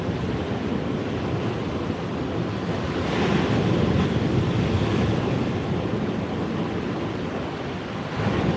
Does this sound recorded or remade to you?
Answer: recorded